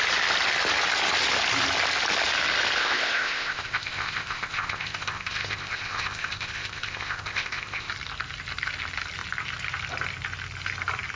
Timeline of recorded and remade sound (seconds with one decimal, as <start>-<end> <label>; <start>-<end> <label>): 0.0-2.8 recorded; 2.8-7.9 remade; 7.9-11.2 recorded